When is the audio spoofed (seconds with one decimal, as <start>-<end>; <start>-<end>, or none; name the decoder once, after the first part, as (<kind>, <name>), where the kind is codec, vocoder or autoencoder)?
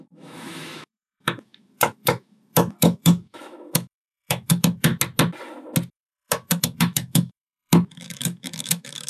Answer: 0.0-4.9 (autoencoder, DAC-VAE); 5.9-9.1